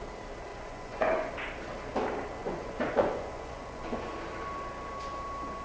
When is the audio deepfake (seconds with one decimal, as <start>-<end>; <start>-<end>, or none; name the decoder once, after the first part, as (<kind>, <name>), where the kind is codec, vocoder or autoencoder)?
0.5-1.3 (vocoder, Vocos); 2.4-4.2